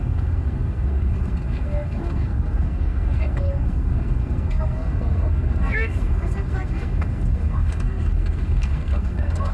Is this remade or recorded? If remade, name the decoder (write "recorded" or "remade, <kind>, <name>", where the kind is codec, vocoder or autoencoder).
remade, codec, SNAC